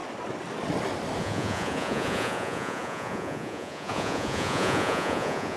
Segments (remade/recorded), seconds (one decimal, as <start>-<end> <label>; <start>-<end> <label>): 0.0-1.2 recorded; 1.2-5.6 remade